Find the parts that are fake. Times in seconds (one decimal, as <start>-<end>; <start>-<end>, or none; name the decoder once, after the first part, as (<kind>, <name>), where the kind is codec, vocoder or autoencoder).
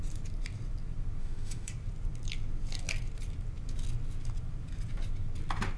1.2-1.7 (autoencoder, DAC-VAE)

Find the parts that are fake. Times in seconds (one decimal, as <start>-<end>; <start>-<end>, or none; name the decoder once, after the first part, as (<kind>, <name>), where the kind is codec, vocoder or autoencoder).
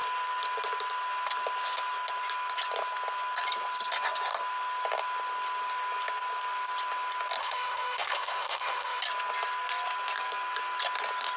7.4-9.0 (autoencoder, DAC-VAE)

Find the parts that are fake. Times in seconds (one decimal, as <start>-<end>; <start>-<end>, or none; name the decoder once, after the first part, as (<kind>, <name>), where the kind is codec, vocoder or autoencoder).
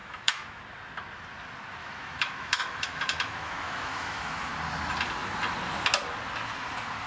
0.0-0.6 (autoencoder, DAC-VAE); 1.8-4.5